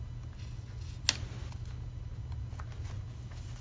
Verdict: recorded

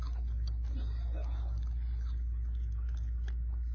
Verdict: recorded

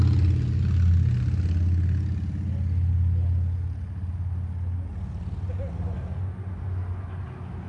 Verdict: recorded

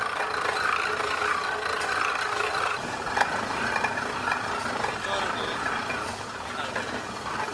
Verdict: recorded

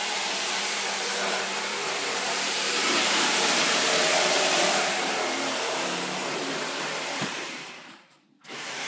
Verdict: remade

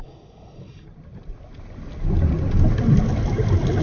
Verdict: recorded